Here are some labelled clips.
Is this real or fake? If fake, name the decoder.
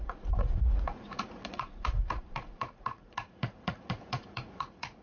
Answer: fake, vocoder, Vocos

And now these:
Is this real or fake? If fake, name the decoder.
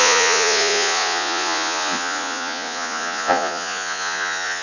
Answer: fake, vocoder, Vocos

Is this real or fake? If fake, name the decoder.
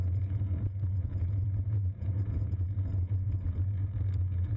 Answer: fake, vocoder, Vocos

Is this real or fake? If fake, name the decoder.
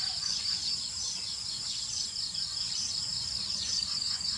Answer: fake, vocoder, Vocos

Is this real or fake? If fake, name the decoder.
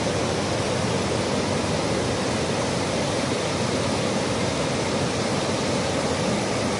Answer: real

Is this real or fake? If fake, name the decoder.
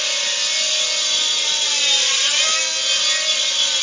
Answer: real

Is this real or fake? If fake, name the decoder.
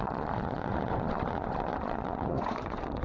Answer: fake, vocoder, Vocos